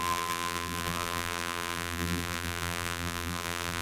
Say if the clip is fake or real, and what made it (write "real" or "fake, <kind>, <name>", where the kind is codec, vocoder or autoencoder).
fake, vocoder, BigVGAN v2